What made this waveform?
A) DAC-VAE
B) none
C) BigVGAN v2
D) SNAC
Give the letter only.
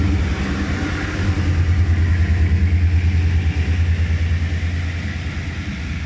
B